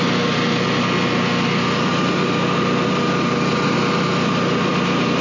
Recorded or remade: recorded